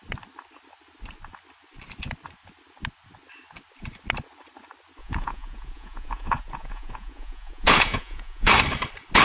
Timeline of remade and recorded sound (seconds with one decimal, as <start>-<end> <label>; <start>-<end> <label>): 0.0-5.0 recorded; 5.0-8.5 remade; 8.5-9.2 recorded